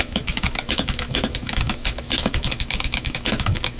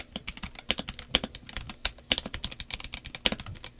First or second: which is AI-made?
first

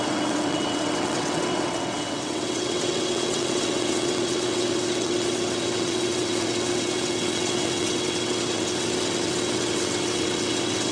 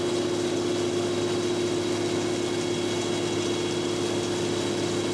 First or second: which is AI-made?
first